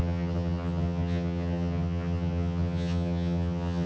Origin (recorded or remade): remade